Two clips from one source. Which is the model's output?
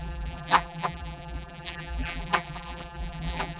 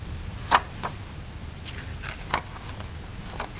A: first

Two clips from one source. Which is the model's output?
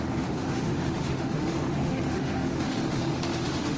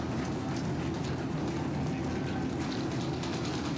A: first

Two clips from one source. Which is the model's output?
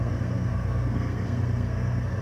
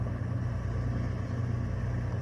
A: first